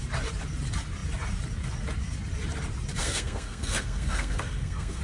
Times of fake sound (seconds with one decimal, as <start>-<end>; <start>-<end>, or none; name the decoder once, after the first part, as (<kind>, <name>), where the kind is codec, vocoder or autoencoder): 3.0-5.0 (codec, SNAC)